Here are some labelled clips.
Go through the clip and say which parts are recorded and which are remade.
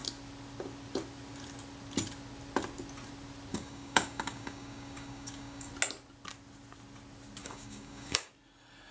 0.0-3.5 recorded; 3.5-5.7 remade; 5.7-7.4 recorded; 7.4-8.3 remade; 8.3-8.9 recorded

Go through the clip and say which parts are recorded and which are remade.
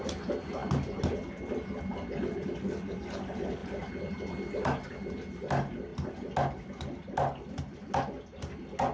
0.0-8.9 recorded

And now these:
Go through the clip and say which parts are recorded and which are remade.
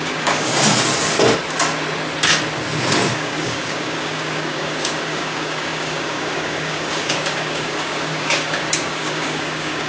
0.0-0.5 remade; 0.5-3.1 recorded; 3.1-9.9 remade